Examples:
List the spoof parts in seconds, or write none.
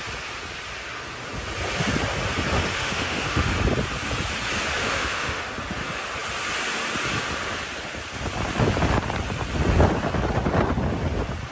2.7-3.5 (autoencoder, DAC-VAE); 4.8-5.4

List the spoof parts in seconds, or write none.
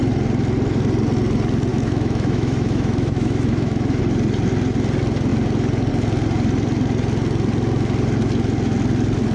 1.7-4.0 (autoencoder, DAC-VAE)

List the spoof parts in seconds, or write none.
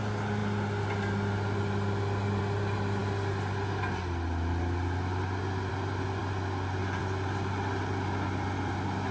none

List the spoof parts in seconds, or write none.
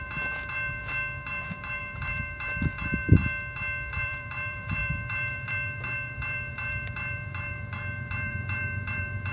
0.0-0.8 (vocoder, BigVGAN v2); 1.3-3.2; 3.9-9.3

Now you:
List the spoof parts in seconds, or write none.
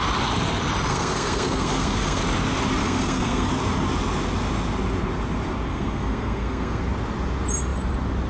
0.9-2.2 (codec, SNAC); 2.8-3.5; 5.7-6.8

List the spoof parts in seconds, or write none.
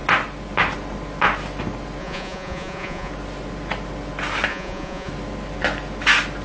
2.0-3.1 (vocoder, Vocos); 4.5-5.1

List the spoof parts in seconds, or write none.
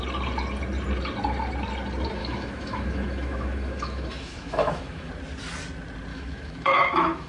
2.2-5.1 (autoencoder, DAC-VAE); 6.1-7.3